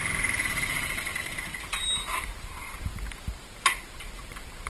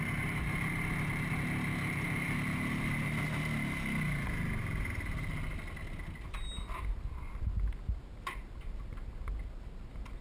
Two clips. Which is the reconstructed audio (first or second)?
first